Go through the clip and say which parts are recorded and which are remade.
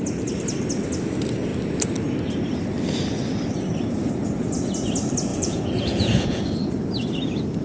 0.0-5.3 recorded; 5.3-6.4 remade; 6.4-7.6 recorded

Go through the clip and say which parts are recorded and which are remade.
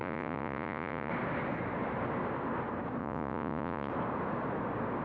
0.0-1.1 remade; 1.1-3.0 recorded; 3.0-3.9 remade; 3.9-5.0 recorded